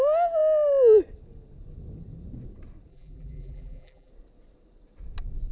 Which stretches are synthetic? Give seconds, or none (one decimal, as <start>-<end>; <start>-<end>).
2.9-4.1

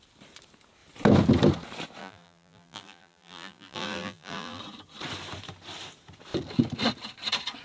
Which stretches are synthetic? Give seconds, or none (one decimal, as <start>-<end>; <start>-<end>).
2.0-4.6

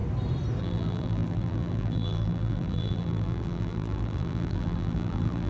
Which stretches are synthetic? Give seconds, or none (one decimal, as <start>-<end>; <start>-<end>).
0.6-5.5

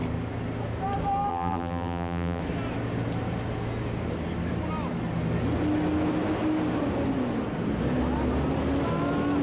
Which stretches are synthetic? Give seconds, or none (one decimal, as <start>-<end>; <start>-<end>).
1.3-2.4

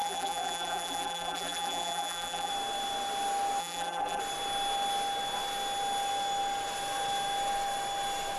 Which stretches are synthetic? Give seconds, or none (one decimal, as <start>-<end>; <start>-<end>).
0.0-2.5; 3.6-4.2

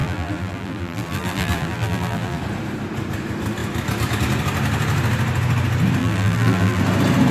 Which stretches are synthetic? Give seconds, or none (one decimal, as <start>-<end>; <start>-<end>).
0.0-2.4; 6.0-6.8

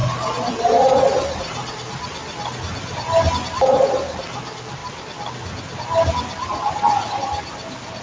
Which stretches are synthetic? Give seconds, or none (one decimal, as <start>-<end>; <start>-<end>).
1.3-2.2; 3.3-8.0